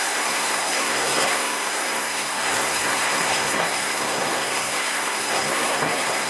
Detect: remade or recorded remade